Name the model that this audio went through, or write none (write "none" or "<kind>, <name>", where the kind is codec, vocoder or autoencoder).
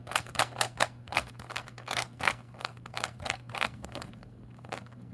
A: codec, SNAC